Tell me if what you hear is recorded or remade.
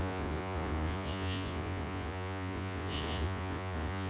remade